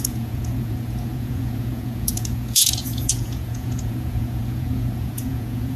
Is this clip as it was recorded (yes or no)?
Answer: no